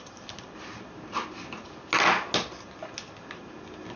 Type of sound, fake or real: real